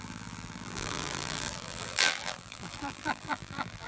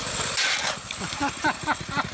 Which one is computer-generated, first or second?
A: first